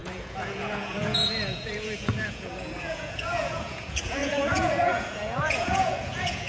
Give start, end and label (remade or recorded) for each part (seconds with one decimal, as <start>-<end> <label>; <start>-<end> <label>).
0.0-6.5 remade

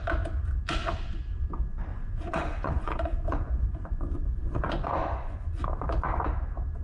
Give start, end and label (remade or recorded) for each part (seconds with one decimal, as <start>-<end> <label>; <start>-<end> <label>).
0.0-1.9 recorded; 1.9-6.0 remade; 6.0-6.8 recorded

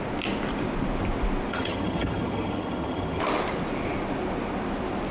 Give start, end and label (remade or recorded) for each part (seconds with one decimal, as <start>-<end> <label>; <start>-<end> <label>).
0.0-1.5 recorded; 1.5-3.2 remade; 3.2-5.1 recorded

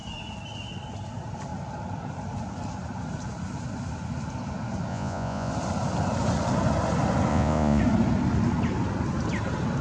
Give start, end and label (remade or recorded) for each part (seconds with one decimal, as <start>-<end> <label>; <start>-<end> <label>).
0.0-4.9 recorded; 4.9-5.5 remade; 5.5-7.3 recorded; 7.3-7.8 remade; 7.8-9.8 recorded

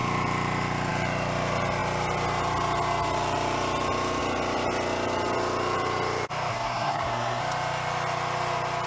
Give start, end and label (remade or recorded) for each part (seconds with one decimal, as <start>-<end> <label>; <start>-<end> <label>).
0.0-6.5 recorded; 6.5-7.4 remade; 7.4-8.9 recorded

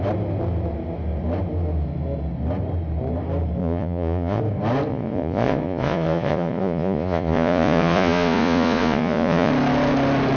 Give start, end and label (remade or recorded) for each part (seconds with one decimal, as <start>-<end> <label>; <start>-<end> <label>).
0.0-3.6 recorded; 3.6-4.4 remade; 4.4-4.9 recorded; 4.9-9.5 remade; 9.5-10.4 recorded

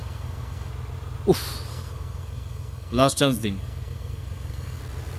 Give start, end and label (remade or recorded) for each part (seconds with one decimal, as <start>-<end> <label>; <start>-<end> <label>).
0.0-0.7 remade; 0.7-1.7 recorded; 1.7-4.8 remade; 4.8-5.2 recorded

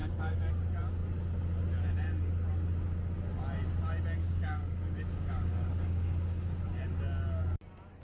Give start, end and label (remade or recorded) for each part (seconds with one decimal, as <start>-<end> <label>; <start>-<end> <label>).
0.0-0.5 remade; 0.5-4.2 recorded; 4.2-6.6 remade; 6.6-8.0 recorded